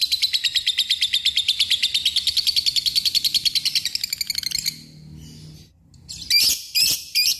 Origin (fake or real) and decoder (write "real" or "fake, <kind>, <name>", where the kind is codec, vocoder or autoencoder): real